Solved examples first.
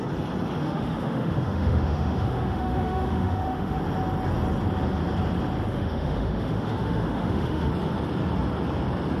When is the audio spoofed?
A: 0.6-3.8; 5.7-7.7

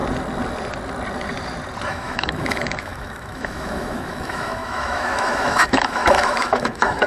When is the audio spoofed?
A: 1.9-7.1

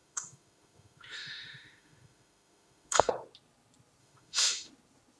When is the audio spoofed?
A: 0.0-3.1; 4.0-4.7

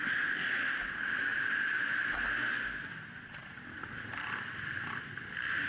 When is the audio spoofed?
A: none

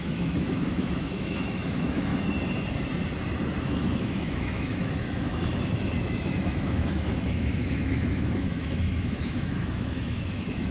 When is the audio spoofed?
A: 0.0-2.1; 3.6-10.7